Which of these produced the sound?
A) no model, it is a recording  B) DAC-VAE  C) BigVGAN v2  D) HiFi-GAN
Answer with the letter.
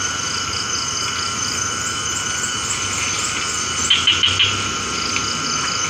A